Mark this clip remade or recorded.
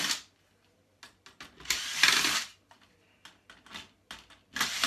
recorded